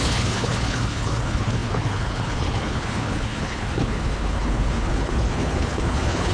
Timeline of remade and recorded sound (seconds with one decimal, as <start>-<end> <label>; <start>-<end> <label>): 0.0-6.3 remade